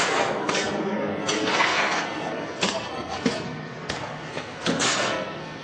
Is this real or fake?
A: fake